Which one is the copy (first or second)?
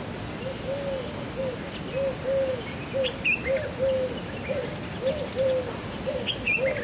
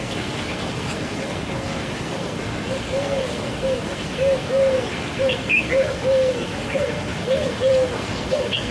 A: second